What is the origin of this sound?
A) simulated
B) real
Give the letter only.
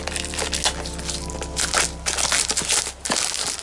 B